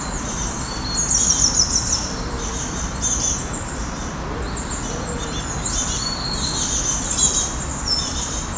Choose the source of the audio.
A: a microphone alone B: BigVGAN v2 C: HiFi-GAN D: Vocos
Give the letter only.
A